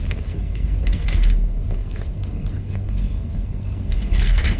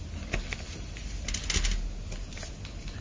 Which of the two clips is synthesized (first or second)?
first